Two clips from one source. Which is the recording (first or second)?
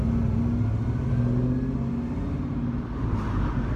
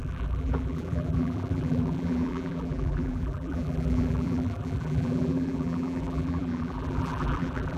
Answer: first